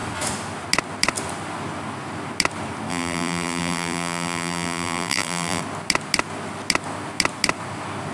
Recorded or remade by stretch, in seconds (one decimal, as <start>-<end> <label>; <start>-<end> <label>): 0.0-2.9 recorded; 2.9-5.6 remade; 5.6-8.1 recorded